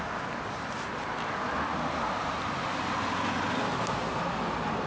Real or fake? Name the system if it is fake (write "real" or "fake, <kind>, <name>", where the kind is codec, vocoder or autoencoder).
real